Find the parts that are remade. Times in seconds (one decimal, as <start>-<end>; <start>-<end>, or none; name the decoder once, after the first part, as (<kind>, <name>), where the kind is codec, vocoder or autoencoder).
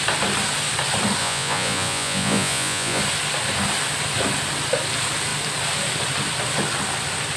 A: 1.2-3.0 (vocoder, Vocos)